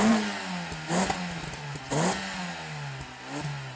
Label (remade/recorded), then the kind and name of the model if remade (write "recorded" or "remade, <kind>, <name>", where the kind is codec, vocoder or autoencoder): recorded